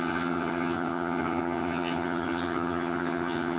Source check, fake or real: fake